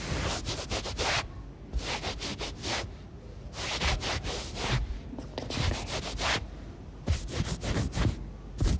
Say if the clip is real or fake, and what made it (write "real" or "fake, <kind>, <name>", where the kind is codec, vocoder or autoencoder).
real